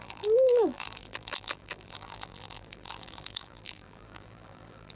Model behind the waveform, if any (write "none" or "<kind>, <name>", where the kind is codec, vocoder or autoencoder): vocoder, BigVGAN v2